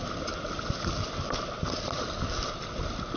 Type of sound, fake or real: real